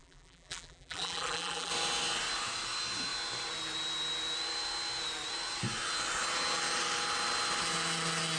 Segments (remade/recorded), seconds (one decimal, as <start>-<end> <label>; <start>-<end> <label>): 0.0-1.7 remade; 1.7-8.4 recorded